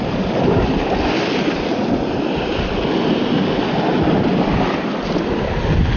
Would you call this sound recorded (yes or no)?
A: yes